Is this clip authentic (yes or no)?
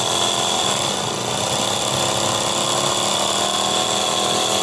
yes